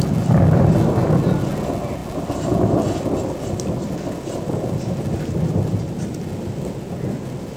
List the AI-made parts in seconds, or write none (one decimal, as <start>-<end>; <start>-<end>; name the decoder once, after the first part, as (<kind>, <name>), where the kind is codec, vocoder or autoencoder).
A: none